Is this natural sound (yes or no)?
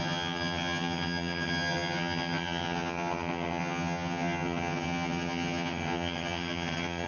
no